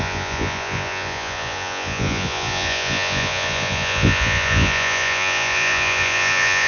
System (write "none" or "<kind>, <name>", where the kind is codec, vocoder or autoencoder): vocoder, Vocos